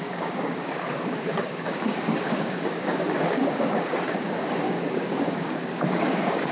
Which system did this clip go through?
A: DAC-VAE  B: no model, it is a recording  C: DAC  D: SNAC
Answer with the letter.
C